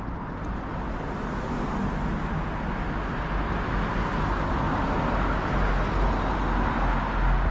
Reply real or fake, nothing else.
real